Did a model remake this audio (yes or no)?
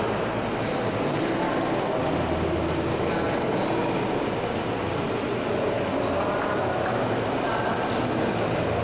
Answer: no